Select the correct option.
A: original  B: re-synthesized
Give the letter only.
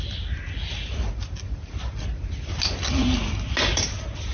A